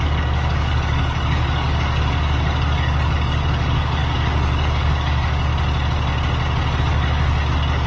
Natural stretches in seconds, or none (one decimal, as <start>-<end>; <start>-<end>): 5.5-6.8